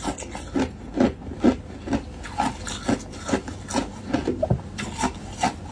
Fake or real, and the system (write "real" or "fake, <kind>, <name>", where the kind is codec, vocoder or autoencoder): real